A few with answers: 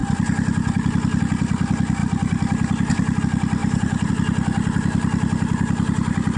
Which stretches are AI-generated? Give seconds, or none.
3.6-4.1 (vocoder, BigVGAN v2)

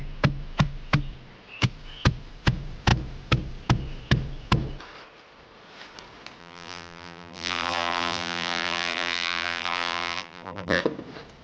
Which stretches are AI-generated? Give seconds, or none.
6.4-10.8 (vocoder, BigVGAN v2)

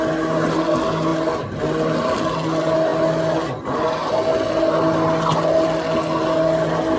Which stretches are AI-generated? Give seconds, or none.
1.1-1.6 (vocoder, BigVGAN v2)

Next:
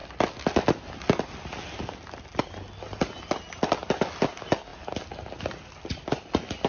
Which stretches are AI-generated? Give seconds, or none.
none

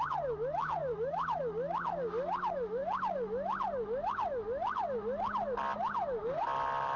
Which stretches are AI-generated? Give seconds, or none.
0.8-1.4 (vocoder, BigVGAN v2)

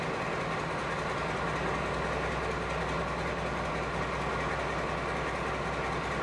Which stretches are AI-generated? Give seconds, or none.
none

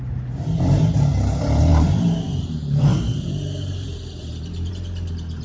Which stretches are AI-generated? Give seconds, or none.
1.7-4.7 (vocoder, BigVGAN v2)

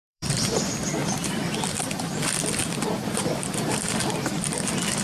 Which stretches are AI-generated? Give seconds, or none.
0.0-0.6 (vocoder, BigVGAN v2); 1.0-4.0